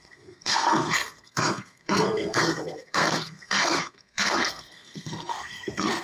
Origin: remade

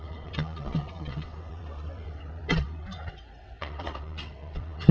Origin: remade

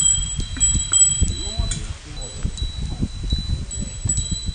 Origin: recorded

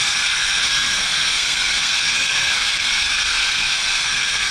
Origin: remade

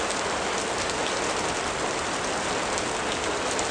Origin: recorded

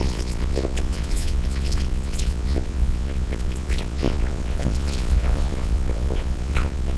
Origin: remade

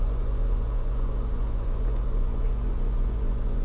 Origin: remade